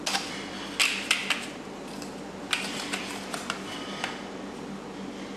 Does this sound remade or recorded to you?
recorded